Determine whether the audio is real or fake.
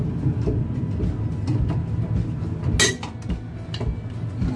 real